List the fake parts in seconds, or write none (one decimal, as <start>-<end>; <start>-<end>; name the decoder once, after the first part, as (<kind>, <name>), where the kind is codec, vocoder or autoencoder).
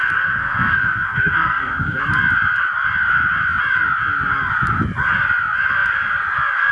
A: 0.0-2.0 (codec, SNAC)